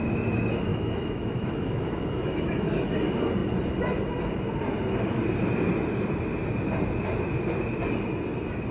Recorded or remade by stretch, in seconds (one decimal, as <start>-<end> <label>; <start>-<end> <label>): 0.0-0.7 recorded; 0.7-2.9 remade; 2.9-8.7 recorded